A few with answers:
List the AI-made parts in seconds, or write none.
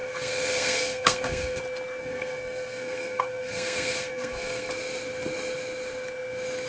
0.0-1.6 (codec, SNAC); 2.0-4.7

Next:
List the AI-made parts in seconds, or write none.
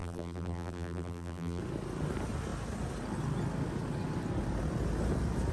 0.0-1.6 (vocoder, BigVGAN v2)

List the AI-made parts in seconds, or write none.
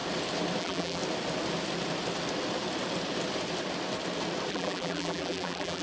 0.6-1.0 (vocoder, BigVGAN v2); 4.5-5.8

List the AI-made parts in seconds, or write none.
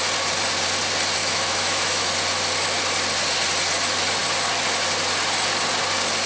1.2-2.1 (autoencoder, DAC-VAE)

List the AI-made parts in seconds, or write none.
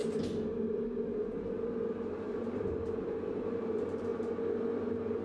1.3-4.1 (vocoder, BigVGAN v2)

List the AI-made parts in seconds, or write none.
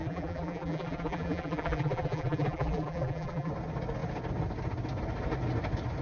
0.0-3.5 (vocoder, BigVGAN v2)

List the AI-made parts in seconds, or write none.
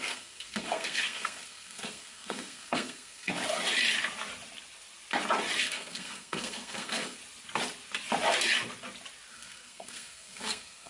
0.0-3.3 (codec, SNAC); 5.6-7.2; 9.3-10.9